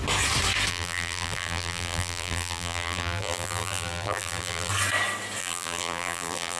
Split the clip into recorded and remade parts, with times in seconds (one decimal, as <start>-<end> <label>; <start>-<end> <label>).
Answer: 0.0-0.7 recorded; 0.7-4.7 remade; 4.7-5.4 recorded; 5.4-6.6 remade